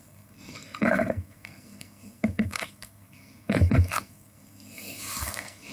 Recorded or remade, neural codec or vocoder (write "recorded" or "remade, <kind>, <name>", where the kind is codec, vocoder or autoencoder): remade, codec, SNAC